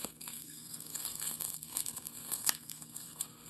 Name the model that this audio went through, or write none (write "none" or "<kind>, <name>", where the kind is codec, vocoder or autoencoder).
codec, SNAC